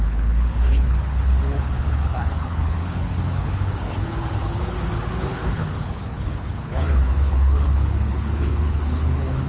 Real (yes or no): no